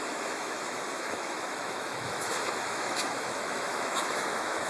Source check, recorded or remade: remade